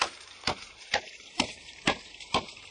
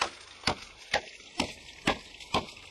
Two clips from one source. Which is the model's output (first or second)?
first